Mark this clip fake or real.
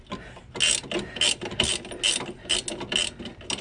real